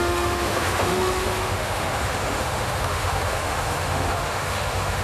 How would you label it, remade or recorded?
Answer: remade